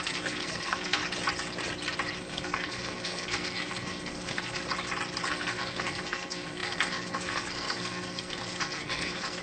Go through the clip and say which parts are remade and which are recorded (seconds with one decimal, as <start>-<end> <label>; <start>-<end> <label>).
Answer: 0.0-1.0 remade; 1.0-2.2 recorded; 2.2-4.6 remade; 4.6-5.3 recorded; 5.3-9.4 remade